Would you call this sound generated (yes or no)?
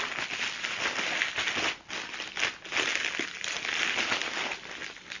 no